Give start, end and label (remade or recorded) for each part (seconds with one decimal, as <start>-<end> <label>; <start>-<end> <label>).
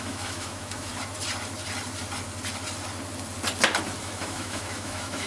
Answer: 0.0-0.9 remade; 0.9-4.0 recorded; 4.0-5.3 remade